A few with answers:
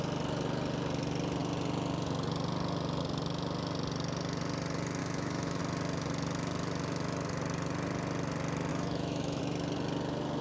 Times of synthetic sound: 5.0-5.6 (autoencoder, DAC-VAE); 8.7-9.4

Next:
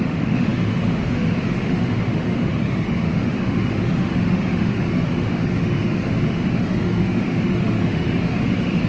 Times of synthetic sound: 0.0-8.9 (autoencoder, DAC-VAE)

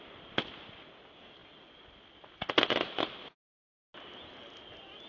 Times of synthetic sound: none

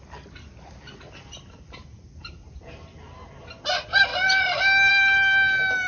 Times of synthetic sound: none

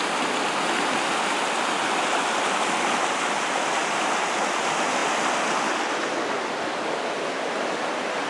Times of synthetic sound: none